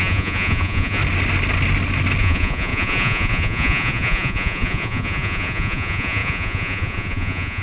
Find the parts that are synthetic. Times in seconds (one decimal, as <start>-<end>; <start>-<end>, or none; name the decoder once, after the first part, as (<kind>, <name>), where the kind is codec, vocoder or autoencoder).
0.0-1.0 (vocoder, Vocos); 2.2-7.6